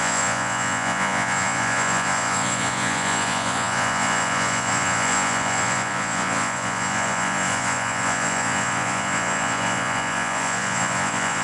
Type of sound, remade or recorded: remade